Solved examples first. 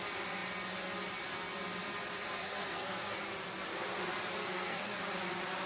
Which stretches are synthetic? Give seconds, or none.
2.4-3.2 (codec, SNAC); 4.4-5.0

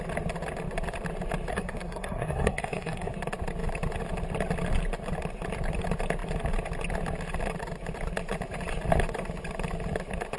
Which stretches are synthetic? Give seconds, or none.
1.5-3.1 (codec, SNAC)

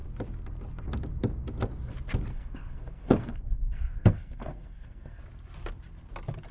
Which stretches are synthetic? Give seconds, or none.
2.3-5.2 (codec, SNAC)

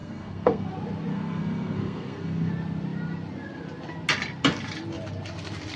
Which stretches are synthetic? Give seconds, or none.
0.0-0.7 (codec, SNAC); 1.1-2.5

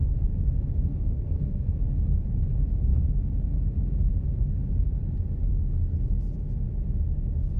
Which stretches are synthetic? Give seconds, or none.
0.9-1.8 (codec, SNAC)